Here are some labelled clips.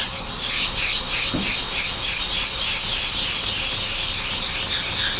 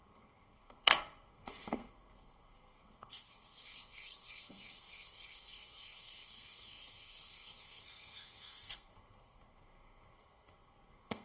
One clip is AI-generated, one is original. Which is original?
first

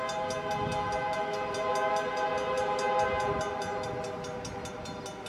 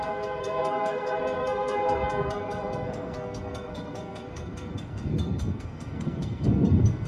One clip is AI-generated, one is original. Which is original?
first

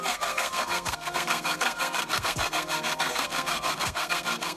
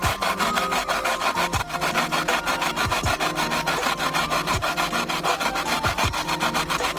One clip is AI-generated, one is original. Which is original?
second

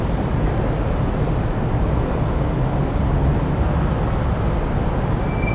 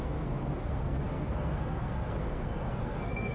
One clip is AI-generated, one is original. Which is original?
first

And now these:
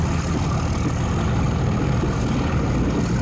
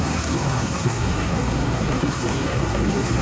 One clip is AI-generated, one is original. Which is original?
first